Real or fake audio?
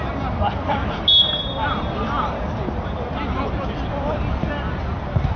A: real